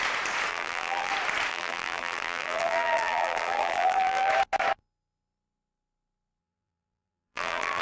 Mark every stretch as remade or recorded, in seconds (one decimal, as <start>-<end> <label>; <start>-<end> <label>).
0.0-0.5 recorded; 0.5-1.1 remade; 1.1-1.5 recorded; 1.5-4.3 remade; 4.3-6.4 recorded; 6.4-7.8 remade